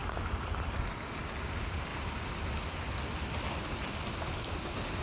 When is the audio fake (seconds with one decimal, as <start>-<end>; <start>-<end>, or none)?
none